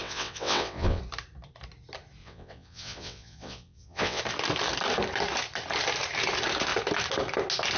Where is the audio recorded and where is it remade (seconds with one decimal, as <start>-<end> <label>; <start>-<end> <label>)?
0.0-1.0 remade; 1.0-2.2 recorded; 2.2-4.2 remade; 4.2-7.8 recorded